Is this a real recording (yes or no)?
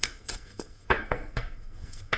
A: no